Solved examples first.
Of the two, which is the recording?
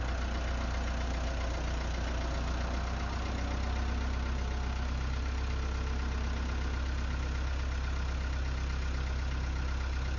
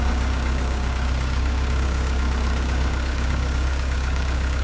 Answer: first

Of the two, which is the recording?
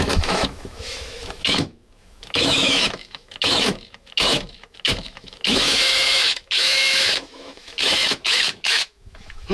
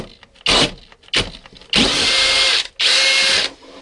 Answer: second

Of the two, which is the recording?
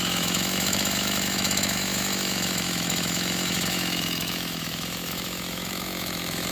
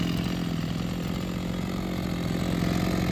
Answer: second